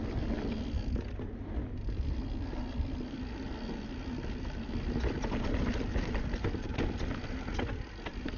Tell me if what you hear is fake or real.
real